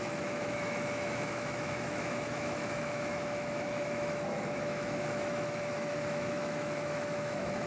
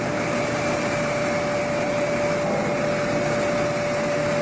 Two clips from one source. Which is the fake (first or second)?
first